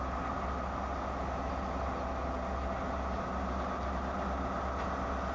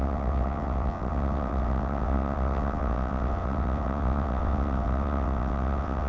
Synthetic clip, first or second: second